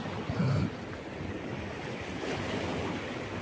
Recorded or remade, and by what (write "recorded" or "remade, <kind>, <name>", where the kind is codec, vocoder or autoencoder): recorded